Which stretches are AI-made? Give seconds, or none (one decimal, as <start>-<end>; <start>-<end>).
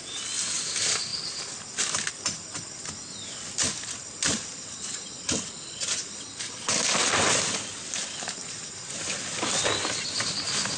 none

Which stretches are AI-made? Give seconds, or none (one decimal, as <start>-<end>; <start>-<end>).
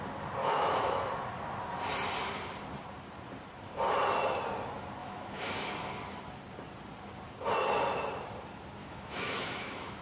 0.4-1.1; 5.0-5.5; 8.8-10.0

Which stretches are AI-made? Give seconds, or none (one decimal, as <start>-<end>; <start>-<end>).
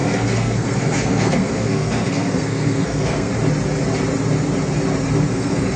0.0-3.3; 5.3-5.8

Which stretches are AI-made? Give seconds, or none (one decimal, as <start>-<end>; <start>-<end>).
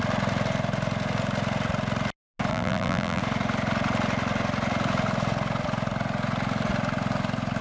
2.5-3.2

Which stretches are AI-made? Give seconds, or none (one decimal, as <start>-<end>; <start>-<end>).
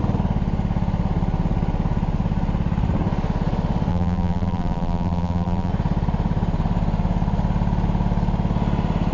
3.9-5.7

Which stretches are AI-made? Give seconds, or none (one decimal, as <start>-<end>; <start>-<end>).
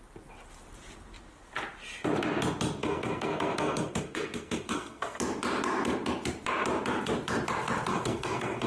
2.8-5.2; 7.9-8.7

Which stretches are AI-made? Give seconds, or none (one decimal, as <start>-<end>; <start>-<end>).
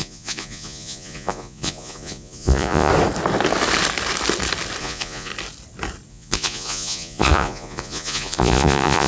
0.0-2.9; 4.8-5.3; 6.1-9.1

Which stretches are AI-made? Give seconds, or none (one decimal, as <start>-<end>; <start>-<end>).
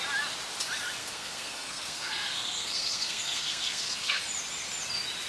1.0-4.2